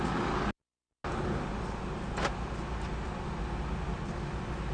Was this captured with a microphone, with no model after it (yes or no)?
yes